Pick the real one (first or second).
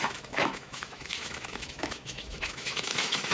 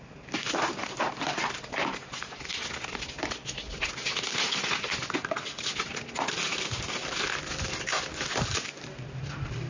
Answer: second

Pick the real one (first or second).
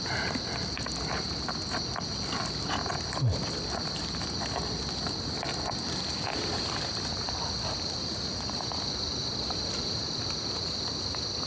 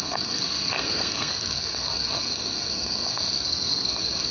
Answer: first